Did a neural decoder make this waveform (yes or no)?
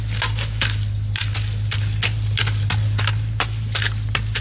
no